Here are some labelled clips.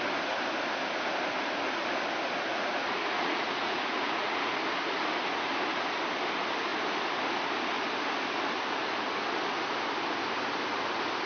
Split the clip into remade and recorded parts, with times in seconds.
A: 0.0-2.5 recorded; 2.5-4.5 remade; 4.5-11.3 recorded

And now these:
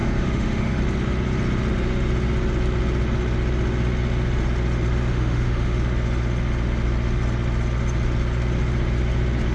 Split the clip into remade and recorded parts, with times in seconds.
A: 0.0-0.8 remade; 0.8-5.1 recorded; 5.1-5.8 remade; 5.8-9.5 recorded

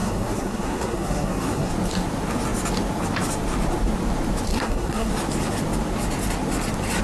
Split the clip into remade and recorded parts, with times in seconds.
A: 0.0-1.7 remade; 1.7-4.5 recorded; 4.5-5.1 remade; 5.1-7.0 recorded